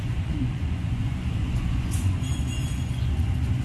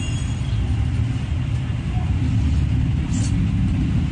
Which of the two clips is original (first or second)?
second